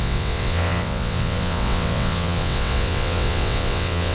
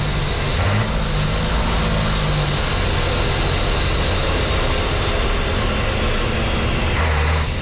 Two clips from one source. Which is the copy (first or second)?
first